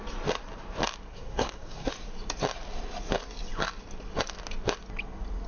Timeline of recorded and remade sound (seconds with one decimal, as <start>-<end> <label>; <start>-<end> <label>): 0.0-1.1 recorded; 1.1-1.9 remade; 1.9-5.5 recorded